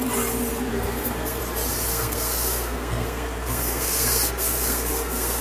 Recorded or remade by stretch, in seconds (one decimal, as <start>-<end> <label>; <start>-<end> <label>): 0.0-0.7 recorded; 0.7-1.4 remade; 1.4-1.9 recorded; 1.9-5.4 remade

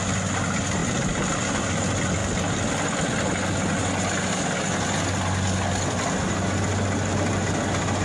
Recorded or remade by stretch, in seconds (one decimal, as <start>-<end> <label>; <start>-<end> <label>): 0.0-8.0 recorded

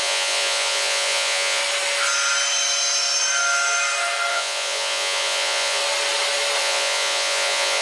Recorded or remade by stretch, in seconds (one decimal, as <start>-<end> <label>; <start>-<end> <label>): 0.0-1.6 remade; 1.6-4.3 recorded; 4.3-5.8 remade; 5.8-6.6 recorded; 6.6-7.8 remade

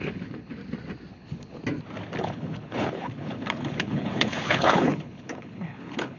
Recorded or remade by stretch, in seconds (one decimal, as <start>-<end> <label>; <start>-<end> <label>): 0.0-0.6 remade; 0.6-1.1 recorded; 1.1-1.6 remade; 1.6-2.2 recorded; 2.2-6.2 remade

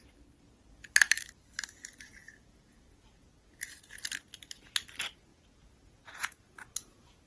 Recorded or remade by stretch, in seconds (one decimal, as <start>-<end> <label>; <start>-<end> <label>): 0.0-2.2 recorded; 2.2-4.0 remade; 4.0-5.3 recorded; 5.3-7.3 remade

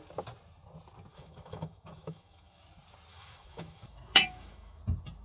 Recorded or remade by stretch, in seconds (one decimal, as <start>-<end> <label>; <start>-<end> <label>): 0.0-1.1 recorded; 1.1-2.6 remade; 2.6-3.1 recorded; 3.1-4.8 remade; 4.8-5.2 recorded